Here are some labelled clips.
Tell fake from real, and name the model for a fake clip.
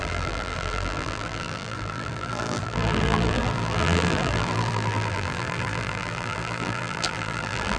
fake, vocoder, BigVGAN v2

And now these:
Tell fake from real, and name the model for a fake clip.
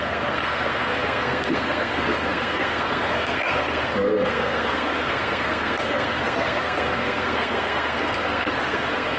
fake, codec, SNAC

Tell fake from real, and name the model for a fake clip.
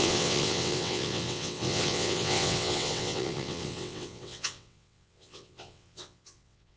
fake, vocoder, WaveNeXt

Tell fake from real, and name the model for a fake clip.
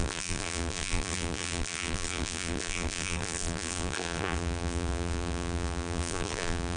fake, vocoder, BigVGAN v2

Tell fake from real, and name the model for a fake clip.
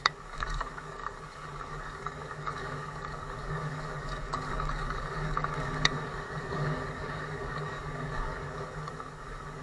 fake, codec, DAC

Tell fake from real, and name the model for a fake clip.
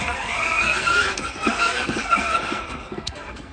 fake, codec, SNAC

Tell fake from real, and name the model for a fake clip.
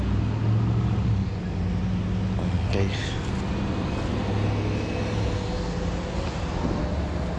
real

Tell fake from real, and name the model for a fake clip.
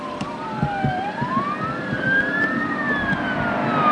real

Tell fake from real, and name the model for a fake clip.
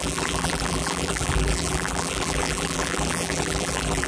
fake, vocoder, BigVGAN v2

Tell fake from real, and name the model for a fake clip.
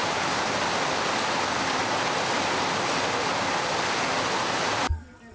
real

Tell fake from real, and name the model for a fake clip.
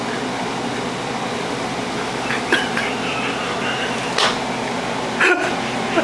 real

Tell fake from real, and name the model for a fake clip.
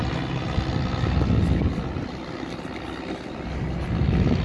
real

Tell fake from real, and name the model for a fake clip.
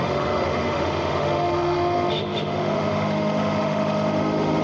fake, autoencoder, DAC-VAE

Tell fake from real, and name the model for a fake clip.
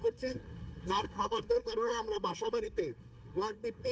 fake, codec, SNAC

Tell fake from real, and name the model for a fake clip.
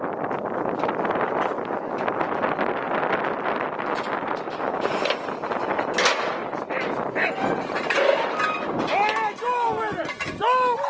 real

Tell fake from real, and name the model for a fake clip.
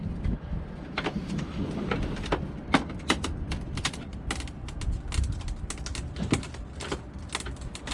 real